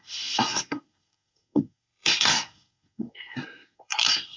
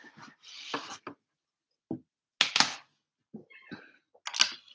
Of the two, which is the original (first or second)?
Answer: second